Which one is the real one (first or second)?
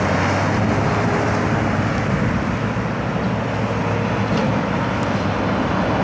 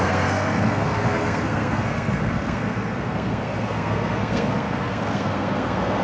first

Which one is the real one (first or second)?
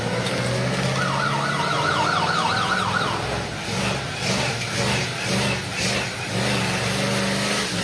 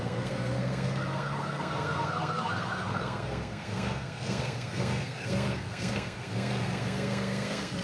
first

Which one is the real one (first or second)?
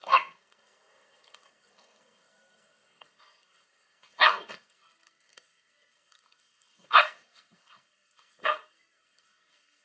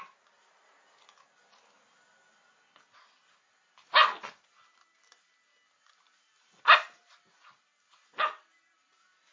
second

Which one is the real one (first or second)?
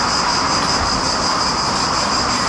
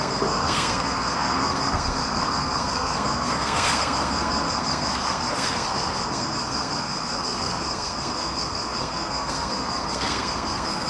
first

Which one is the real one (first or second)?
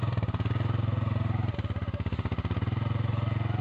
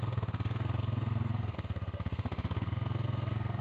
first